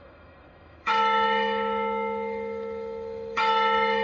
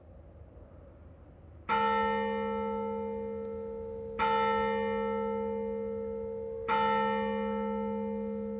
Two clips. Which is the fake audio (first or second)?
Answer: first